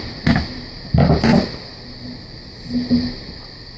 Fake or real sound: real